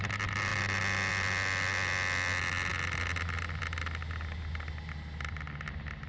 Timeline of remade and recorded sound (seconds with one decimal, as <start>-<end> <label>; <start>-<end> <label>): 0.0-6.1 recorded